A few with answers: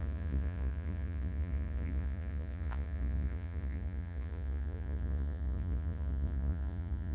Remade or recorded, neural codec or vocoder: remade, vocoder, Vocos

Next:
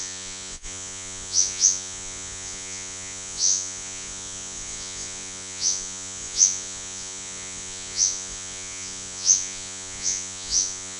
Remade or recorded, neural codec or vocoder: remade, vocoder, Vocos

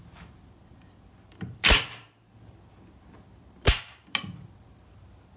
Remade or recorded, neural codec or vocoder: recorded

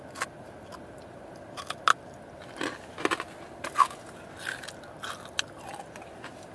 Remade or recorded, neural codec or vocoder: recorded